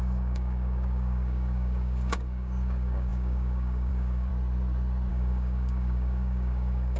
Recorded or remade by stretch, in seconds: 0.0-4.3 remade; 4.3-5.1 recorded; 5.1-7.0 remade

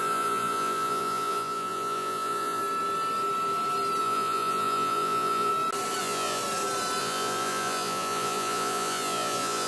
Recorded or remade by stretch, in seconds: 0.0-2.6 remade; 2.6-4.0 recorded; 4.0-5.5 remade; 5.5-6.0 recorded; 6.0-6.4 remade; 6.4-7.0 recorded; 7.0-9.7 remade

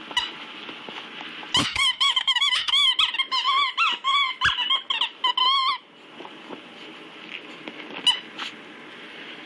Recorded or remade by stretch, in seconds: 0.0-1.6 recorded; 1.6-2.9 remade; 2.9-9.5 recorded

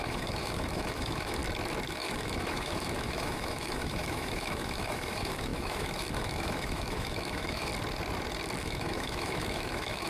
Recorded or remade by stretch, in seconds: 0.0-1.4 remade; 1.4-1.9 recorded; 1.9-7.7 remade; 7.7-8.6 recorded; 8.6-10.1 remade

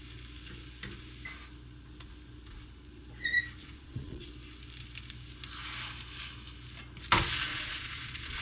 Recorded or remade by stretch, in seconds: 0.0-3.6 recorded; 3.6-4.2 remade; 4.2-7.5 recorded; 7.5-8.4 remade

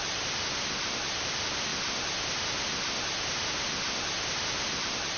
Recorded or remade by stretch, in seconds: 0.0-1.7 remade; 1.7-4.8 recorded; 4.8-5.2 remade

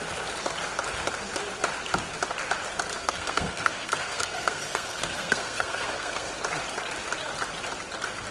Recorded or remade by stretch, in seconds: 0.0-3.0 recorded; 3.0-6.3 remade; 6.3-8.3 recorded